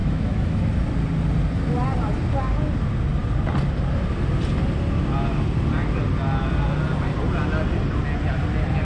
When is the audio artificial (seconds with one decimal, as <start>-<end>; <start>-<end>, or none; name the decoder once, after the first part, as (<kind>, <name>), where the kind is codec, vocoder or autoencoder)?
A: 0.0-0.7 (autoencoder, DAC-VAE)